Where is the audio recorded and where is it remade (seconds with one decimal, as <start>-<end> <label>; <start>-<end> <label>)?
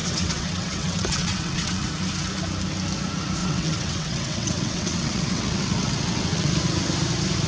0.0-1.9 remade; 1.9-3.4 recorded; 3.4-6.5 remade; 6.5-7.5 recorded